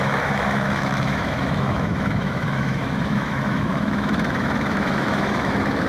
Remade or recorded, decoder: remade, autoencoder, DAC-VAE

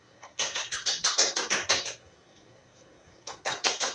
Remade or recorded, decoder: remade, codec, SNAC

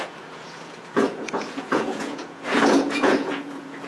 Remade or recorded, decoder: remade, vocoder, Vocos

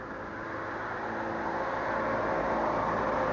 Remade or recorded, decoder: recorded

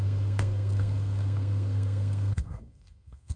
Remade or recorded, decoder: remade, codec, SNAC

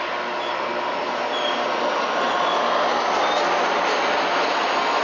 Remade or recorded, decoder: recorded